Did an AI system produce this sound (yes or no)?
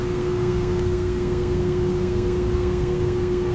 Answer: yes